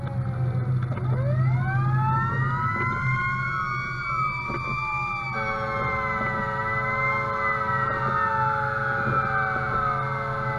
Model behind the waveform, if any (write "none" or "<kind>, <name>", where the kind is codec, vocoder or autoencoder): none